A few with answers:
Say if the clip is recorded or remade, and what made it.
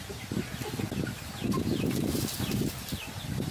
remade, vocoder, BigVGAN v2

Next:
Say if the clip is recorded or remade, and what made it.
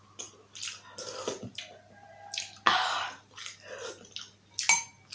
recorded